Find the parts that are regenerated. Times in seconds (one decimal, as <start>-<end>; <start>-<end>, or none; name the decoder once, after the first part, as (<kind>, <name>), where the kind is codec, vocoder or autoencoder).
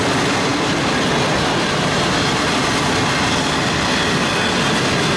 none